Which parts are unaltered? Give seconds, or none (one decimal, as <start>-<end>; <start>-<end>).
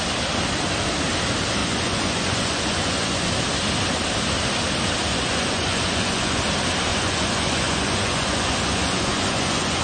0.0-1.6; 3.3-5.1; 6.4-6.9